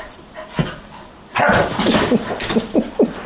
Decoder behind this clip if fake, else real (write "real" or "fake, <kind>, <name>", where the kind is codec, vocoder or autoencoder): fake, vocoder, BigVGAN v2